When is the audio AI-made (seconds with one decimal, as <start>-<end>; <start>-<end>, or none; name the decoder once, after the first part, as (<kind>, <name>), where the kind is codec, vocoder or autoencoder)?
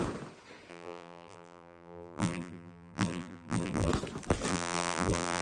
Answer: 0.7-3.9 (vocoder, BigVGAN v2); 4.5-5.4